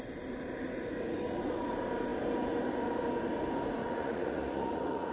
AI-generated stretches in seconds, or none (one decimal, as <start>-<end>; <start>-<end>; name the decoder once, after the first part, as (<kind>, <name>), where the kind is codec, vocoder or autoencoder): 3.8-5.1 (vocoder, Vocos)